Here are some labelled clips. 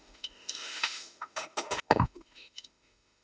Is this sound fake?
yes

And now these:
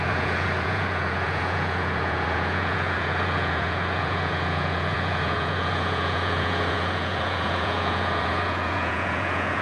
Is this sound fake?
yes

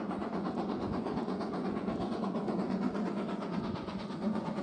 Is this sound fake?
yes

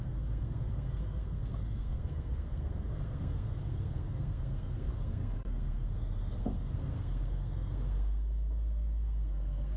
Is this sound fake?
yes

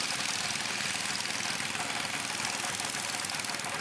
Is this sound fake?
no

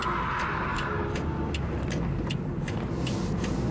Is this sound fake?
no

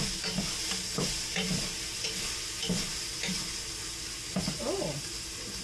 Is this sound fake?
no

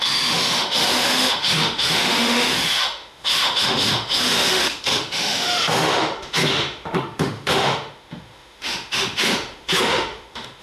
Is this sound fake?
yes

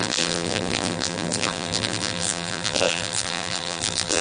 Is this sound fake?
yes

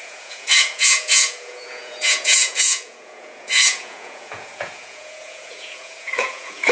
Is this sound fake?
yes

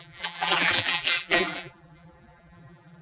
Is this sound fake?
yes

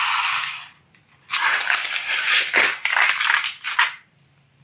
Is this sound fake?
no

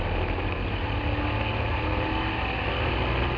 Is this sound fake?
no